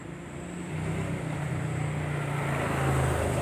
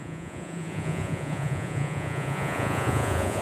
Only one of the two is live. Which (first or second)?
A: first